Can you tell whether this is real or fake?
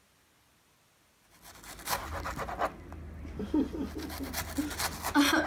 real